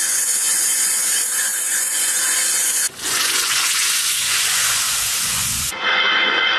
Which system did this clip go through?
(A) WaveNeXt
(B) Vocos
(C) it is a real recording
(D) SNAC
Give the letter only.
B